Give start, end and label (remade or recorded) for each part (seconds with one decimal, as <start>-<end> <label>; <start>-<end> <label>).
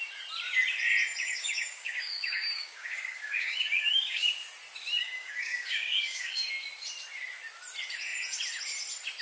0.0-1.3 recorded; 1.3-4.3 remade; 4.3-5.0 recorded; 5.0-6.5 remade; 6.5-9.2 recorded